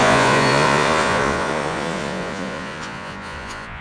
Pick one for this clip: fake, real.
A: fake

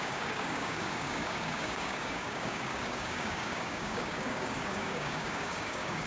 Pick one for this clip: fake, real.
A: fake